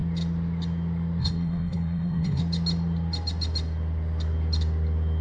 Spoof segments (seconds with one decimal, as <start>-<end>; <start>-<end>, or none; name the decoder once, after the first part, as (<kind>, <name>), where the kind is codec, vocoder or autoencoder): 1.2-2.4 (codec, SNAC)